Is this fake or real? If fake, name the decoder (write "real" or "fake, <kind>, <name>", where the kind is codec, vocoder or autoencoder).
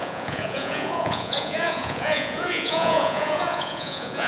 fake, vocoder, Vocos